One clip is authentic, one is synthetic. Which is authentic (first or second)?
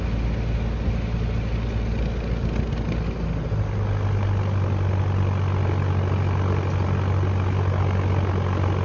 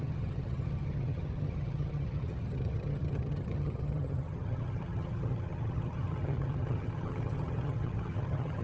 first